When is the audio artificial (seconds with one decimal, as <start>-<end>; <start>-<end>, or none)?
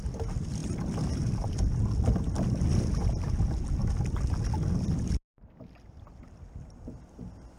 none